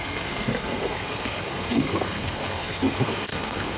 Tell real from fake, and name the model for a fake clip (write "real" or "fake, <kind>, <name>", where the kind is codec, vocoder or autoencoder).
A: fake, codec, SNAC